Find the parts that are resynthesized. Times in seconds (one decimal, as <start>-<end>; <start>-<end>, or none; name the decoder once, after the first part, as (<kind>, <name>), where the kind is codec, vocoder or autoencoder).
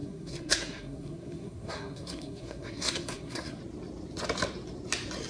0.0-3.6 (codec, SNAC)